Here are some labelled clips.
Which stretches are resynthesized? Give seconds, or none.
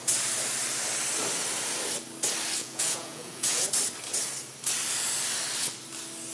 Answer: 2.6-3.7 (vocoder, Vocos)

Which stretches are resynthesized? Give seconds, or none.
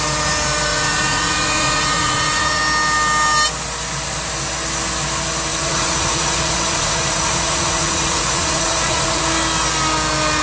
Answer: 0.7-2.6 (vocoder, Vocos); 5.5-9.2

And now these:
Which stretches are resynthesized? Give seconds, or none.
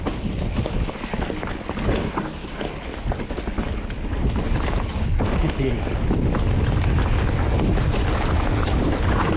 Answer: none